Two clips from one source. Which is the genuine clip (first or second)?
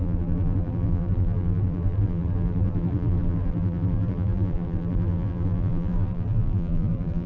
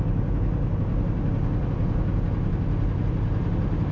second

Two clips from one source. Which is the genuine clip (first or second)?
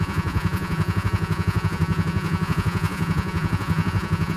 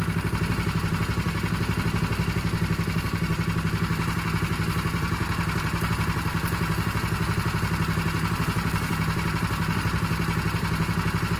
second